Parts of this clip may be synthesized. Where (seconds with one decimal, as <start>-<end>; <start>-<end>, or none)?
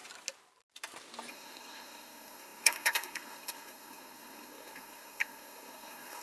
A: 1.3-6.2